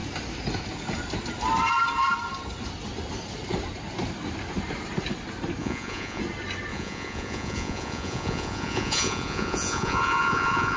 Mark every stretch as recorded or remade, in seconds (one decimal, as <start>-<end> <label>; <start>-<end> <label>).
0.0-5.6 recorded; 5.6-6.2 remade; 6.2-6.7 recorded; 6.7-10.8 remade